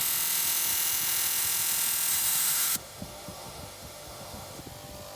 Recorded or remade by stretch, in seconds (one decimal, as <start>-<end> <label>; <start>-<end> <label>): 0.0-2.1 recorded; 2.1-4.6 remade; 4.6-5.2 recorded